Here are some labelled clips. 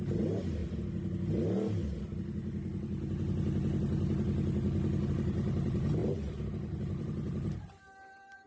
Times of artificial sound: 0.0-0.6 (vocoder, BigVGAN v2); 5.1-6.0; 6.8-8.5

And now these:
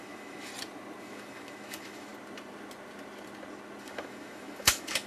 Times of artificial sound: 0.0-0.5 (autoencoder, DAC-VAE); 1.0-2.1; 3.8-5.1

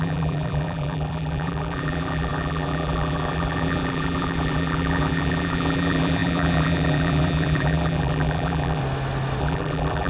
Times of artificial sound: 0.0-8.8 (vocoder, BigVGAN v2); 9.4-10.1